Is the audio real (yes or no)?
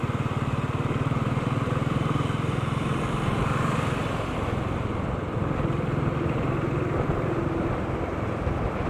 no